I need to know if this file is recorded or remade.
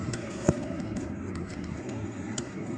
remade